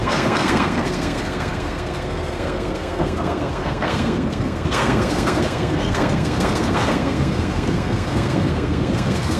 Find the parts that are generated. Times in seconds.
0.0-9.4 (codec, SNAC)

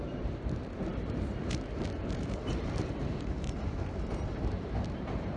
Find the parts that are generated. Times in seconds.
0.0-5.4 (vocoder, BigVGAN v2)

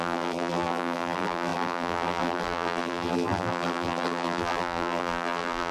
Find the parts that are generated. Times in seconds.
0.0-5.7 (vocoder, BigVGAN v2)

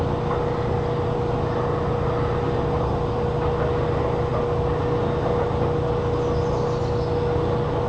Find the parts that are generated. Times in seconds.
none